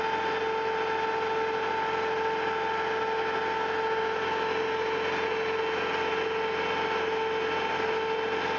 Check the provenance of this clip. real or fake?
real